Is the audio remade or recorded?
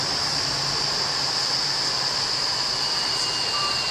recorded